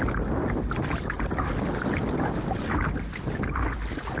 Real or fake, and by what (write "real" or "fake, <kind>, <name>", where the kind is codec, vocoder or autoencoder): real